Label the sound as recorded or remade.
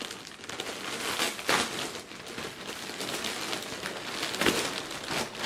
recorded